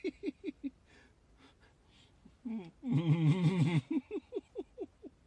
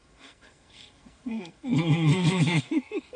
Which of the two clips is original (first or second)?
first